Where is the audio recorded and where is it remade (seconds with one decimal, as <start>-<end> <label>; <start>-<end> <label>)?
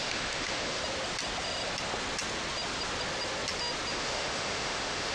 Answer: 0.0-0.8 remade; 0.8-3.9 recorded; 3.9-5.1 remade